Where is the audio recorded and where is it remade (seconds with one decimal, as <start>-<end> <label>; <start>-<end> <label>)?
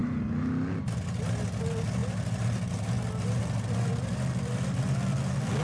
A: 0.0-5.6 recorded